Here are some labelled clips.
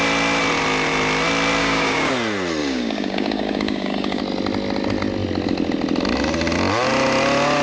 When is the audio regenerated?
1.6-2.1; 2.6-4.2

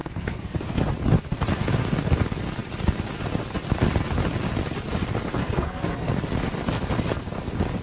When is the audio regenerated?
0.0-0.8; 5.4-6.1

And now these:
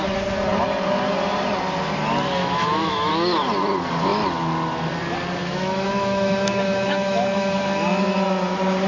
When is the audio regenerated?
2.4-3.1; 5.4-8.1

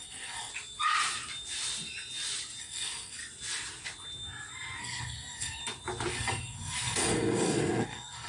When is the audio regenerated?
0.0-0.5; 2.6-3.2; 4.8-5.6; 6.1-8.3

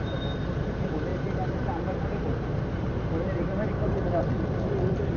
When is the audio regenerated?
1.1-4.2

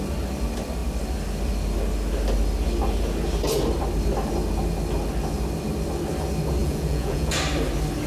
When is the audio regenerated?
6.6-7.3